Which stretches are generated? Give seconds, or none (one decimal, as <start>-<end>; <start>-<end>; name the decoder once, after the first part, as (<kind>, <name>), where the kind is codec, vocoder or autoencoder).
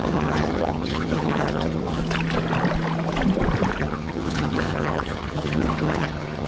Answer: 0.0-2.0 (vocoder, HiFi-GAN); 3.8-6.5